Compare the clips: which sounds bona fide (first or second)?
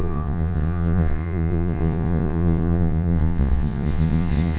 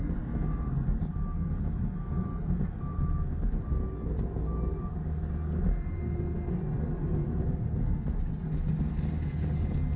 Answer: second